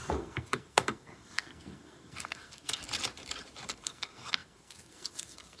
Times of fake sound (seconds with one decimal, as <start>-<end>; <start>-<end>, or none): 0.0-2.8; 3.7-5.6